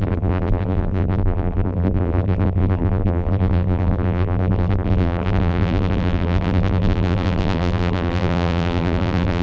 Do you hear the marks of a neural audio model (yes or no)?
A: yes